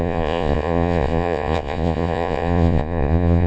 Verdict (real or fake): fake